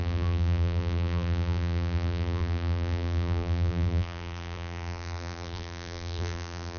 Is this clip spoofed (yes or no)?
yes